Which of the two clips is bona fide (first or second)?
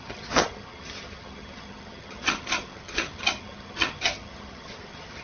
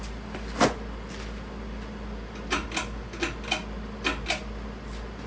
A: second